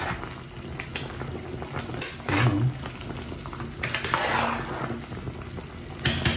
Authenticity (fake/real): real